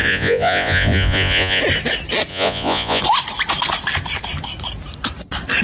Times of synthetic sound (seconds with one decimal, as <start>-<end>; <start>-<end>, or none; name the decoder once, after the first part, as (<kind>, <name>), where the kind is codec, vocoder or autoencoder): 0.0-1.6 (vocoder, Vocos); 2.3-3.0